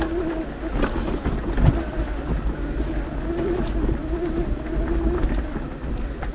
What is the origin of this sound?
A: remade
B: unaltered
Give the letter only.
B